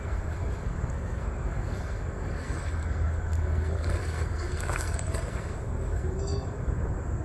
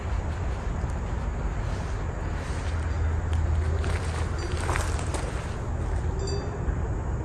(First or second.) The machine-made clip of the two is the first